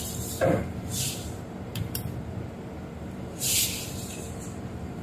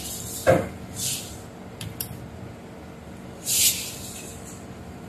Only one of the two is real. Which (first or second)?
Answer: second